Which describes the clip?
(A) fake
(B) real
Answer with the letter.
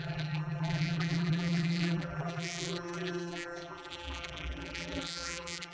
A